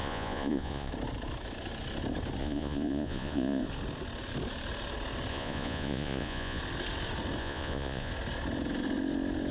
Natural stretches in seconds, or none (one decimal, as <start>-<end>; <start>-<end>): 0.9-2.4; 3.6-5.3; 6.6-7.4; 8.1-9.5